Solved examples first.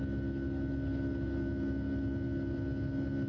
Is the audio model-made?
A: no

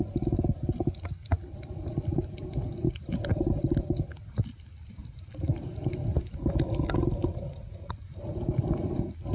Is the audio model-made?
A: no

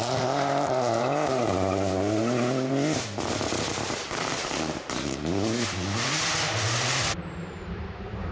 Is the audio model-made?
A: yes